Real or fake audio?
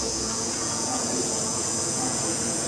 fake